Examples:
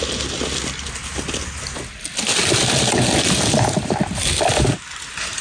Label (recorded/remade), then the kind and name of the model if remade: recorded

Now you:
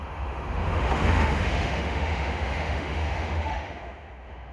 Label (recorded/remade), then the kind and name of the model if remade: remade, autoencoder, DAC-VAE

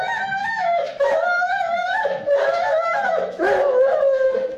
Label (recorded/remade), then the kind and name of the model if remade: remade, autoencoder, DAC-VAE